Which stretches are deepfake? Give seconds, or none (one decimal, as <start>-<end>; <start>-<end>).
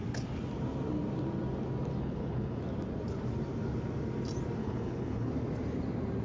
2.0-2.6; 4.6-5.3